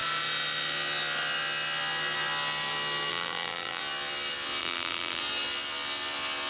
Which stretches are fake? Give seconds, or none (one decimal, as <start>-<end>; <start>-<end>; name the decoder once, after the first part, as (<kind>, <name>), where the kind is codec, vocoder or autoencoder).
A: 3.1-3.8 (vocoder, BigVGAN v2); 4.6-5.2